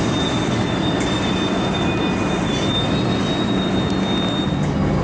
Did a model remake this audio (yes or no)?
no